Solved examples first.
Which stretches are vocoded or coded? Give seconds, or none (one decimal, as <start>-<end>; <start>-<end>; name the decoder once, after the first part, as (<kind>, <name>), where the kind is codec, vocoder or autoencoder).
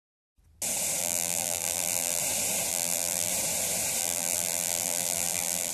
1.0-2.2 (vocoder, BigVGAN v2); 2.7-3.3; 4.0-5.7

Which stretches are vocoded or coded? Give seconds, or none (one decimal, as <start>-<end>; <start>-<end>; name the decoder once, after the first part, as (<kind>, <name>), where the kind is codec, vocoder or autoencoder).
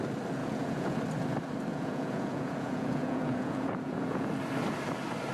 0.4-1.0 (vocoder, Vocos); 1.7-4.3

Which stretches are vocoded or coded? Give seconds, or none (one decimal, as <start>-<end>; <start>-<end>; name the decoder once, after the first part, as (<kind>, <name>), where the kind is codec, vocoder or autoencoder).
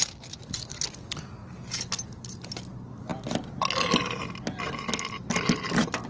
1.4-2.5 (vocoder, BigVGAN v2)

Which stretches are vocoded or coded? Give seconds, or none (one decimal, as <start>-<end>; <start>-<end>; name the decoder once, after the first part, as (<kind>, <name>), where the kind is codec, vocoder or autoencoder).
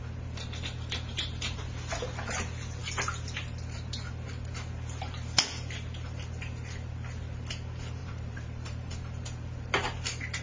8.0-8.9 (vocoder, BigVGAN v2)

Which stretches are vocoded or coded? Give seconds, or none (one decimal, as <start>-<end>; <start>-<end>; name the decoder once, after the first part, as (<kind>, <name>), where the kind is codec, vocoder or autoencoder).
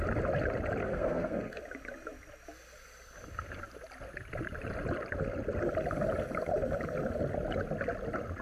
0.8-1.6 (codec, SNAC)